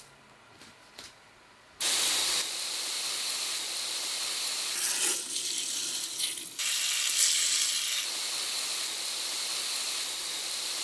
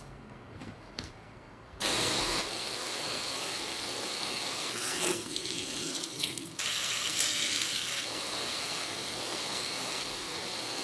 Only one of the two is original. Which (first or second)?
first